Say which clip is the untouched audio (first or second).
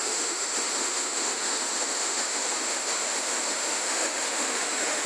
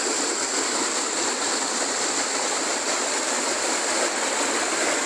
second